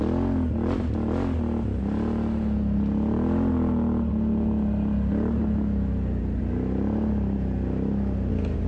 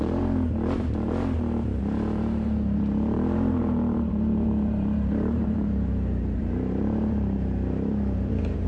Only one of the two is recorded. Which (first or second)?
first